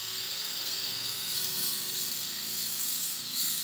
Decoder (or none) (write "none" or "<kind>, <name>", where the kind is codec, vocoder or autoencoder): codec, SNAC